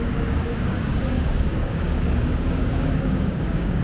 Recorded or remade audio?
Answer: remade